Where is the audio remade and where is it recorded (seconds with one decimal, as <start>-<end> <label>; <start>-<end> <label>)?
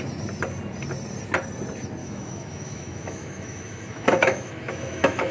0.0-2.0 recorded; 2.0-5.3 remade